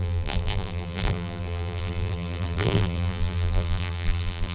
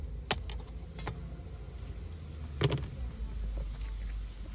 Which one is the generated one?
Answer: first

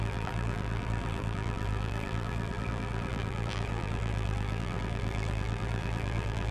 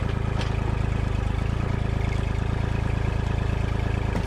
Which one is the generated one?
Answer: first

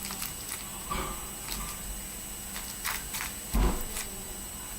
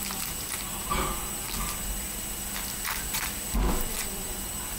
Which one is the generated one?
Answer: second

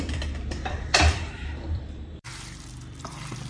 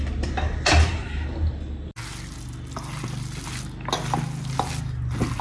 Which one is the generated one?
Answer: first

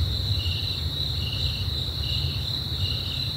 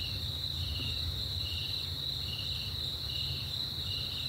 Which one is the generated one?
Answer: first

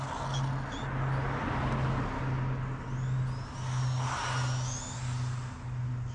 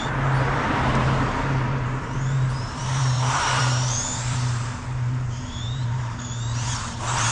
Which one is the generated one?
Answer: second